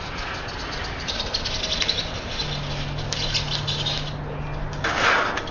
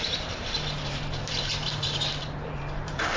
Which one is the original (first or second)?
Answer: first